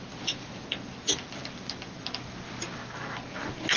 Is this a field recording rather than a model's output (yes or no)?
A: yes